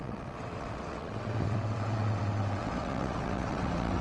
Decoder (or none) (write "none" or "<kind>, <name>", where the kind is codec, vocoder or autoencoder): vocoder, WaveNeXt